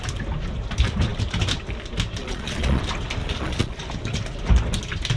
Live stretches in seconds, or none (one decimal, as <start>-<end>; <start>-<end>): 0.0-2.2; 2.8-3.2; 3.8-5.2